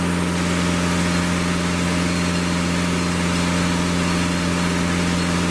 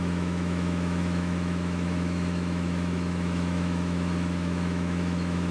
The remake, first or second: second